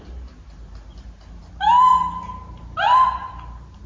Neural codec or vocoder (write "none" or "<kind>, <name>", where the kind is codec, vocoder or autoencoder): none